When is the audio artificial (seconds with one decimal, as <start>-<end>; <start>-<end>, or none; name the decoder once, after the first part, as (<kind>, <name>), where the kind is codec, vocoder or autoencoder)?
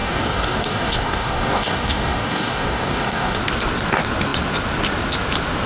0.0-3.4 (codec, DAC)